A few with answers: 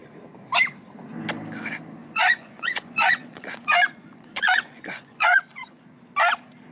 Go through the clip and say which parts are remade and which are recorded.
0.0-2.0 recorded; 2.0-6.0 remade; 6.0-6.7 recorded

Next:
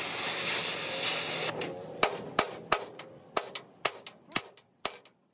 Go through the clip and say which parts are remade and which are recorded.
0.0-5.3 recorded

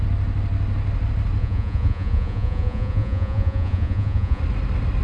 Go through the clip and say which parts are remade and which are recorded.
0.0-1.4 recorded; 1.4-4.4 remade; 4.4-5.0 recorded